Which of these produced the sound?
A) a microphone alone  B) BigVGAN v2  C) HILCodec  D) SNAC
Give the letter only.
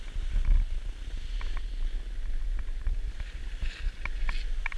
A